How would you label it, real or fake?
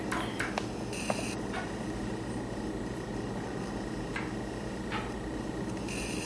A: real